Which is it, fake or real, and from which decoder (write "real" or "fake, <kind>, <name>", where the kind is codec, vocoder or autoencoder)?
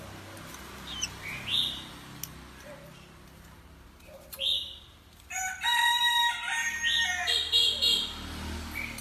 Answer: real